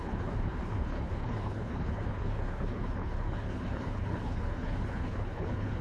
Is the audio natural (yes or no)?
no